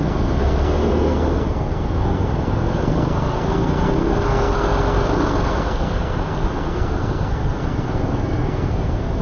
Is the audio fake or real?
fake